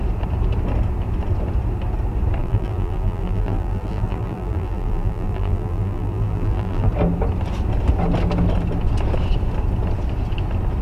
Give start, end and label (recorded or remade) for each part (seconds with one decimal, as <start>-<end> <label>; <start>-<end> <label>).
0.0-2.4 recorded; 2.4-6.9 remade; 6.9-10.8 recorded